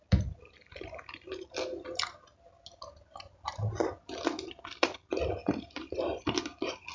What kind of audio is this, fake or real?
real